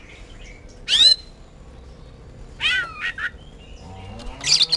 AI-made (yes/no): no